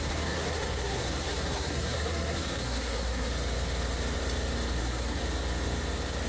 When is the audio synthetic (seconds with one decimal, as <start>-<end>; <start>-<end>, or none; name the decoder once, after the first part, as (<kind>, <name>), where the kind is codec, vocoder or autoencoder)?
0.0-3.3 (codec, SNAC); 4.8-5.2